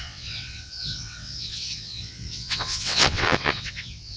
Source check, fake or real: fake